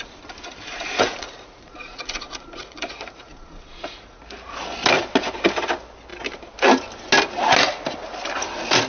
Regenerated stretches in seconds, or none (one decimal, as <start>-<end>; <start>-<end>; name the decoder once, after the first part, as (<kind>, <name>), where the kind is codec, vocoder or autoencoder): 0.7-4.2 (vocoder, Vocos)

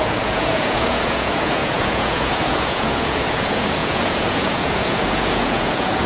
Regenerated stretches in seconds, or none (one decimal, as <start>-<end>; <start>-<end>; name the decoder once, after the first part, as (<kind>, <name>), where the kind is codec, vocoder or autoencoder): 0.0-6.1 (vocoder, Vocos)

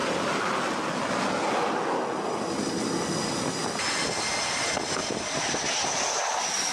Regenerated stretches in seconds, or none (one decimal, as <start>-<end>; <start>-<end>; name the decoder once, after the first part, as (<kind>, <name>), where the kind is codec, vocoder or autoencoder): none

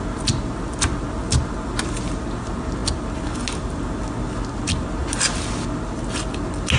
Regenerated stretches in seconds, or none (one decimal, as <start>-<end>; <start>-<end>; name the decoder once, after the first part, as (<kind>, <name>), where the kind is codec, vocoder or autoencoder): none

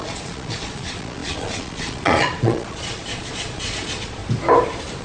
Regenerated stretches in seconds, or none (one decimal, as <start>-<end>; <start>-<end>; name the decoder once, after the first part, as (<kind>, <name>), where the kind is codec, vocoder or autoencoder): 0.0-4.2 (vocoder, Vocos)

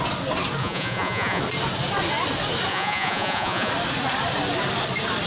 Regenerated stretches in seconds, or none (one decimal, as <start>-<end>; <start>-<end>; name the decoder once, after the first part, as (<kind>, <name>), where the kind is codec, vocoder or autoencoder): 0.6-1.4 (vocoder, Vocos); 2.7-3.7